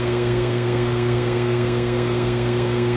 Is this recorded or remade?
remade